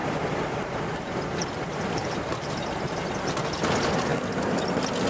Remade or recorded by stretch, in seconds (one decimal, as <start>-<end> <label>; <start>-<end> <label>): 0.0-3.1 remade; 3.1-5.1 recorded